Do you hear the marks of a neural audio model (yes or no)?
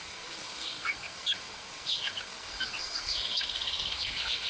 yes